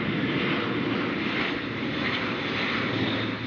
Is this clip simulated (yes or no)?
no